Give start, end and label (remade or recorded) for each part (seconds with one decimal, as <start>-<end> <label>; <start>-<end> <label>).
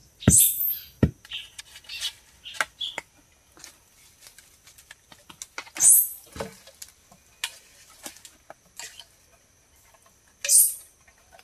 0.0-1.6 remade; 1.6-6.1 recorded; 6.1-6.6 remade; 6.6-11.4 recorded